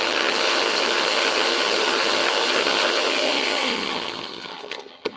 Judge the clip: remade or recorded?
remade